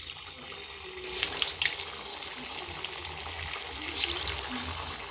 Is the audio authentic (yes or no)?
yes